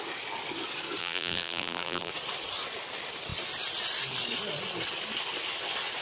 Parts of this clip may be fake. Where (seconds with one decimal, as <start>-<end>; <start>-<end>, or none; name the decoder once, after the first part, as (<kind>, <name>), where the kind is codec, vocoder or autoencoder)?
1.0-2.1 (vocoder, BigVGAN v2)

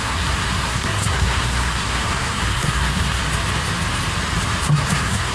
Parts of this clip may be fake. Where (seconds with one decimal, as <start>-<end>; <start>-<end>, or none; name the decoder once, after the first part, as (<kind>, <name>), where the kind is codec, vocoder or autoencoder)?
0.0-3.2 (codec, SNAC); 4.6-5.3

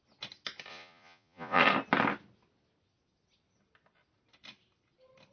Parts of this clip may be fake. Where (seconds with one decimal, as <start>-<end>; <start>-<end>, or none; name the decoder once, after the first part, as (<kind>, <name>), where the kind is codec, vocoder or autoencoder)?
0.7-1.6 (vocoder, Vocos)

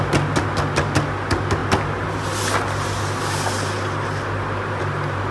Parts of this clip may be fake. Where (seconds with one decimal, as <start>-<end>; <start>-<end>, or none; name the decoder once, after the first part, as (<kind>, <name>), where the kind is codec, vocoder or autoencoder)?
none

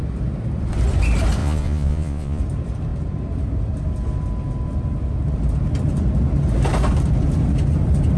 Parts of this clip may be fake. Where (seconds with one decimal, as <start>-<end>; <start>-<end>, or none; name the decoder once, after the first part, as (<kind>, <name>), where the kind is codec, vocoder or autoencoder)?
1.4-2.4 (vocoder, Vocos)

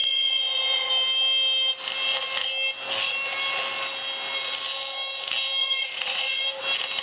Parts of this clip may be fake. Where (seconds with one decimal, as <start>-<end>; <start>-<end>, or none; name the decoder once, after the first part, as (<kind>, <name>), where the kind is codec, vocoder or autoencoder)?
0.0-0.9 (vocoder, Vocos); 5.6-6.4